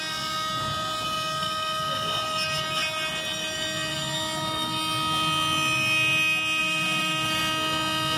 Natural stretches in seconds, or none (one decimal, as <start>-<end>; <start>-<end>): 0.0-6.6; 7.4-8.2